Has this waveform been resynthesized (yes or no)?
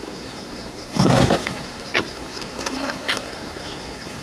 yes